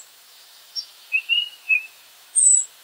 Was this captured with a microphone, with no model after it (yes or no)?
no